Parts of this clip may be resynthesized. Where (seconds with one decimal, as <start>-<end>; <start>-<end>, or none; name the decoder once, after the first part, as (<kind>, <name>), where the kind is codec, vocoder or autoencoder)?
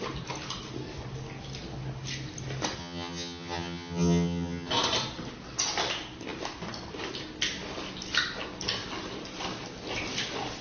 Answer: 2.8-4.7 (vocoder, HiFi-GAN)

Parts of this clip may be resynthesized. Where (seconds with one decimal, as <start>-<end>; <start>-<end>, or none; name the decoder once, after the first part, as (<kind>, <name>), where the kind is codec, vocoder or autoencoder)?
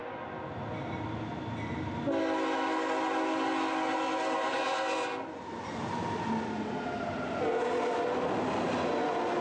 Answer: none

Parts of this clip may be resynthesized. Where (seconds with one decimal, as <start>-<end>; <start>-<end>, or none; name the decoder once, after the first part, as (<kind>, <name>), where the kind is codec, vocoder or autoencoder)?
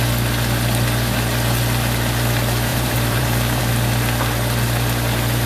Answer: 2.7-3.6 (vocoder, BigVGAN v2)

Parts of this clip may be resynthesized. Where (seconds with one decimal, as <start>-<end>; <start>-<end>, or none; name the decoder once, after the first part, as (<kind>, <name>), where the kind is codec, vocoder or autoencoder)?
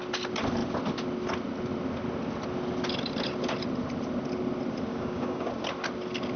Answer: 4.9-5.5 (codec, DAC)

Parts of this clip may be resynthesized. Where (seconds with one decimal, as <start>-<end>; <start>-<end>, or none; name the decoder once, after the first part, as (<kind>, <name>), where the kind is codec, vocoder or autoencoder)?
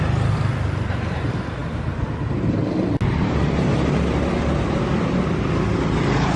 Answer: none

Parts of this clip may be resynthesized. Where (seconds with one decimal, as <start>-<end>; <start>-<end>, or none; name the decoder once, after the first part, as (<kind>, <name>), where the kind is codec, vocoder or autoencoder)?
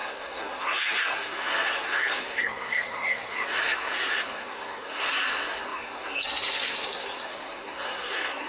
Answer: 0.0-8.5 (codec, SNAC)